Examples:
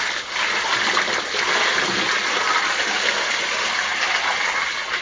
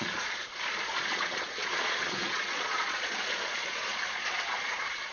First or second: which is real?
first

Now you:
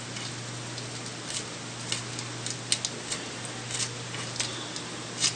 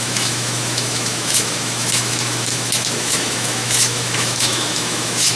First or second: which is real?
first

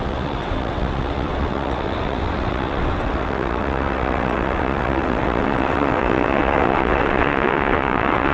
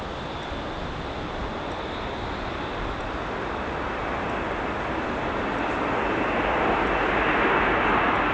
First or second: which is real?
second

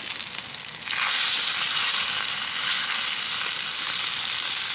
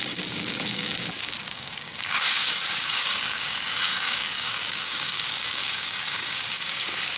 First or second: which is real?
first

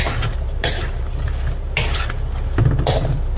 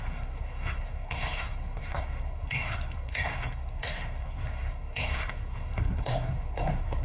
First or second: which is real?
first